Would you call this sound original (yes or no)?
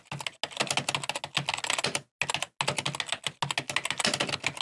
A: yes